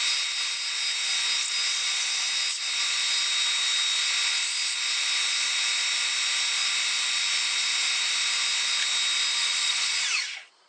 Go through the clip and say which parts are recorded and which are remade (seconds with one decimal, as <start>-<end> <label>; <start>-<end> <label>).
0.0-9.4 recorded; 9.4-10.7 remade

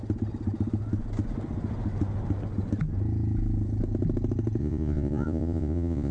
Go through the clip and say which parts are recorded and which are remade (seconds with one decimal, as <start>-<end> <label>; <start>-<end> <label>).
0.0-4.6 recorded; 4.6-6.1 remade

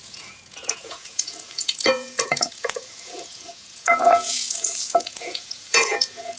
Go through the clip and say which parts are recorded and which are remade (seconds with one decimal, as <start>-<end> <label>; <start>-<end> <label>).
0.0-6.4 remade

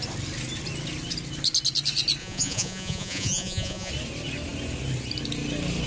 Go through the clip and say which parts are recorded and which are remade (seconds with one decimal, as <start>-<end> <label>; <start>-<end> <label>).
0.0-2.2 recorded; 2.2-3.9 remade; 3.9-5.9 recorded

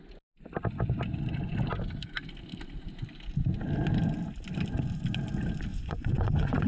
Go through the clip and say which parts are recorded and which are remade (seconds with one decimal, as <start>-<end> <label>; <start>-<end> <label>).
0.0-5.7 recorded; 5.7-6.7 remade

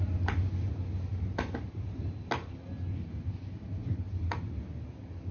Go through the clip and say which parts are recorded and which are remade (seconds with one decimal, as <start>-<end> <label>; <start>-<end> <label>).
0.0-5.3 recorded

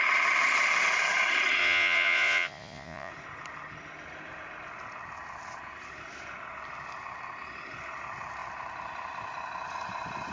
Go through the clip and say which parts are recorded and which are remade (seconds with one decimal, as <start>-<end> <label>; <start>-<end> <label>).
0.0-1.6 recorded; 1.6-3.1 remade; 3.1-10.3 recorded

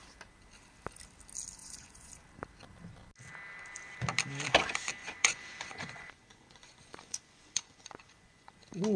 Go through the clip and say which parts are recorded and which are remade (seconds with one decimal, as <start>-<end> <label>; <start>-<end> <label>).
0.0-1.6 recorded; 1.6-2.1 remade; 2.1-5.0 recorded; 5.0-8.5 remade; 8.5-9.0 recorded